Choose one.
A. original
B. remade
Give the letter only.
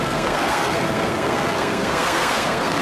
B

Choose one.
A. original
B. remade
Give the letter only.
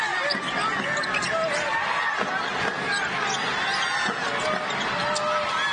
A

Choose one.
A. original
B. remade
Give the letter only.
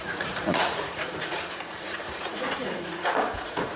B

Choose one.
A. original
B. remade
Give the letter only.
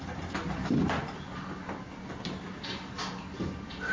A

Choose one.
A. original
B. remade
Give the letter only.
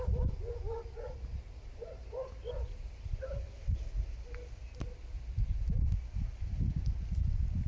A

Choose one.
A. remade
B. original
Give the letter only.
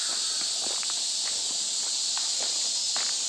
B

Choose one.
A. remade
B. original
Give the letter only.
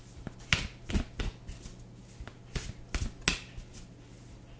B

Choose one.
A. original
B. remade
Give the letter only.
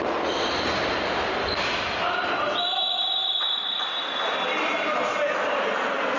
A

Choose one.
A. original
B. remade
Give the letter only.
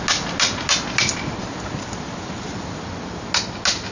A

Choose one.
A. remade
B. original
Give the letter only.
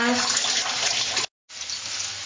B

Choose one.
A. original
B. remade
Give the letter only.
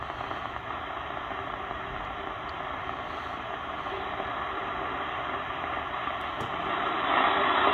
B